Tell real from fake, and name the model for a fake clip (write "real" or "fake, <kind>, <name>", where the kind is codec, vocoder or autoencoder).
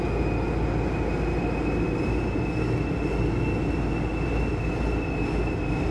real